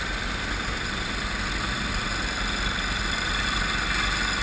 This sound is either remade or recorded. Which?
recorded